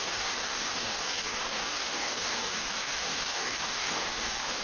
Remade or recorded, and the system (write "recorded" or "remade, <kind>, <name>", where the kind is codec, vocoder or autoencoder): remade, codec, DAC